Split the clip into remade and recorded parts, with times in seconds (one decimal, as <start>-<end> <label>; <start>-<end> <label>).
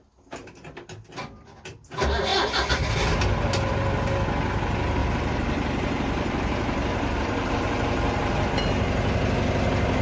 0.0-5.0 recorded; 5.0-8.5 remade; 8.5-10.0 recorded